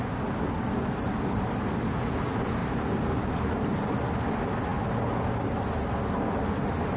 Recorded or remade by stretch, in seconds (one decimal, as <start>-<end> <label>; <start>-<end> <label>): 0.0-7.0 recorded